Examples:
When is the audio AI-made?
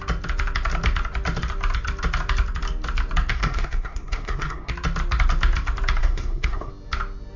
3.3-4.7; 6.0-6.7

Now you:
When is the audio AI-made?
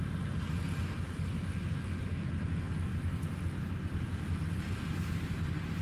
none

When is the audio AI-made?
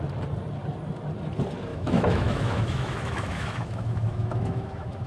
1.7-5.1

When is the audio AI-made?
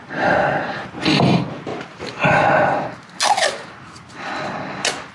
0.0-1.7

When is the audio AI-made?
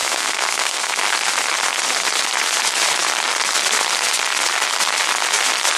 0.0-1.0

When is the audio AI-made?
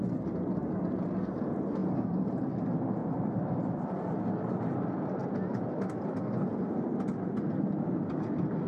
1.8-2.5; 3.0-4.1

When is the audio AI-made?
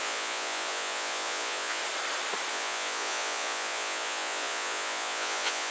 0.0-1.8; 2.5-5.7